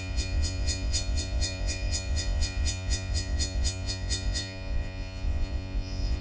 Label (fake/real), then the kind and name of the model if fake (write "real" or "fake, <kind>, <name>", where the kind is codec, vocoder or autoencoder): fake, vocoder, Vocos